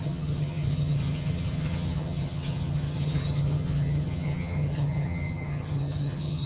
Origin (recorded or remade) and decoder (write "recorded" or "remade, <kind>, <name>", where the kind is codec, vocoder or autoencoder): remade, vocoder, HiFi-GAN